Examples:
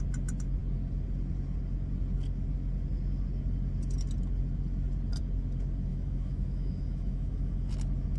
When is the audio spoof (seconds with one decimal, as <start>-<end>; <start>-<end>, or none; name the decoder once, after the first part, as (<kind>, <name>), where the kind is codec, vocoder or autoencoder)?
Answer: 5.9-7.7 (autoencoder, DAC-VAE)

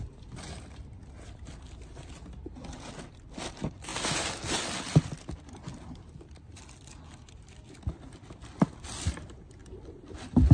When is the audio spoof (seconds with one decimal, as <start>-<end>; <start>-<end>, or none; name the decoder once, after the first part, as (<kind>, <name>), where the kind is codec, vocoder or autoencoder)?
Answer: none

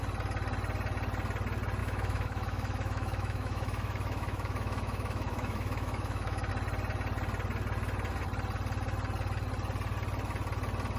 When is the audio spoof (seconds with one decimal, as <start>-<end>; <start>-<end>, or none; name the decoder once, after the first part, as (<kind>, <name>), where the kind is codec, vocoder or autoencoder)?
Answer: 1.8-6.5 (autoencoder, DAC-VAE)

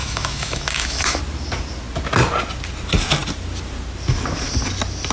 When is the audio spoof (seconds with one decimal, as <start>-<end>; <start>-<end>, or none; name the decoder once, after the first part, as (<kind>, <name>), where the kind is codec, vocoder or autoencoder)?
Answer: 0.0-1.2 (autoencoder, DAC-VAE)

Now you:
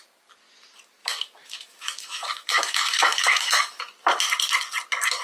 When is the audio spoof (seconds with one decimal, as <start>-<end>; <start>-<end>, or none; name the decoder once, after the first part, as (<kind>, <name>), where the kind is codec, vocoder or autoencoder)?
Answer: 1.0-3.8 (autoencoder, DAC-VAE)